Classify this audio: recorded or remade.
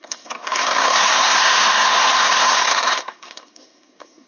remade